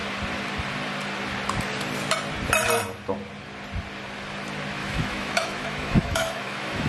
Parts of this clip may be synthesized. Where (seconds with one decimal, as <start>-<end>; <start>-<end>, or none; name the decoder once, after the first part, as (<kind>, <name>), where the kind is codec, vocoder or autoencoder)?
4.8-6.9 (autoencoder, DAC-VAE)